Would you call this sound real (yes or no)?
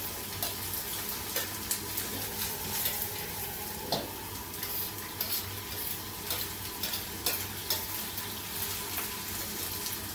yes